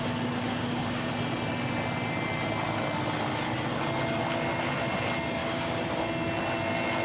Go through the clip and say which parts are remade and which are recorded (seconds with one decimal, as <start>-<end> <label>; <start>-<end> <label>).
0.0-0.6 recorded; 0.6-1.1 remade; 1.1-5.4 recorded; 5.4-6.0 remade; 6.0-7.0 recorded